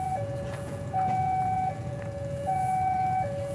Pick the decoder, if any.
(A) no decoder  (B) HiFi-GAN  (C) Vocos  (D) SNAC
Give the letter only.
C